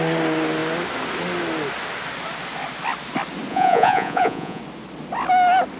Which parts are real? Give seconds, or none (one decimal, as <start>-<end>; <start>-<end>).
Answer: 0.0-3.5; 4.6-5.8